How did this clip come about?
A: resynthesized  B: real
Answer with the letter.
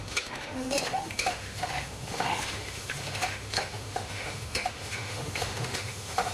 A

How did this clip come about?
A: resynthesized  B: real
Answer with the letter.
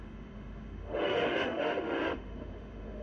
A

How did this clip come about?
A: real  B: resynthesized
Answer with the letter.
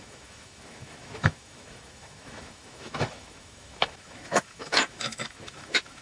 B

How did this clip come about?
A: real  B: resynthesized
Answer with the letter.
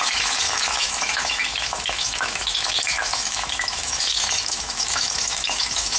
B